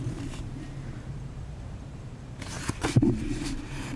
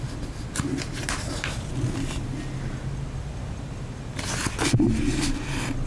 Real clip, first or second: second